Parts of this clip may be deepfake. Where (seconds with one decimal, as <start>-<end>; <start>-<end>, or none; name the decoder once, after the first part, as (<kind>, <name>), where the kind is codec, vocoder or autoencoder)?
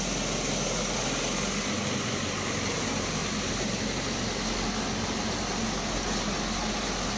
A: none